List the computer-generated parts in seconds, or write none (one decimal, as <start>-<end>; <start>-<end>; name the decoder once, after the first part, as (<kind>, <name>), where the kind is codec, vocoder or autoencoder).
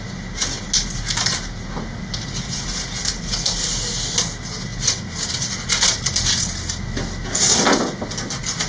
none